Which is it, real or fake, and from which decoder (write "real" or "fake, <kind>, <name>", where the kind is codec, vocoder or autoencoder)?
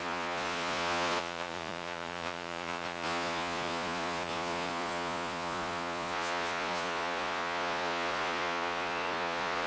fake, vocoder, Vocos